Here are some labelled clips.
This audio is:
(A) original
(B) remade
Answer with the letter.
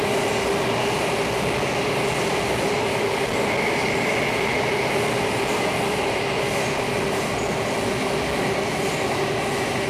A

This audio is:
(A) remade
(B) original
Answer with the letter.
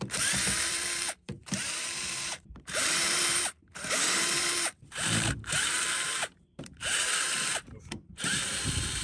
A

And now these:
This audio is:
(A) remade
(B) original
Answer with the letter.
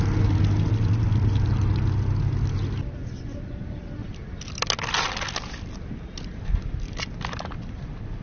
B